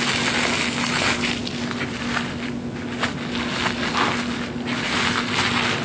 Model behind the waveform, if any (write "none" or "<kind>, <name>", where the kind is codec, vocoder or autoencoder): none